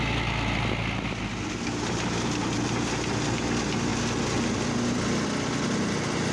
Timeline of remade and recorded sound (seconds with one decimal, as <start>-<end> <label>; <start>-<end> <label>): 0.0-6.3 recorded